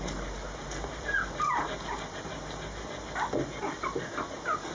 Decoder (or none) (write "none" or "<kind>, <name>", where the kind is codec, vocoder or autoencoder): none